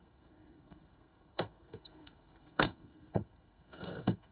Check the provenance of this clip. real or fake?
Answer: fake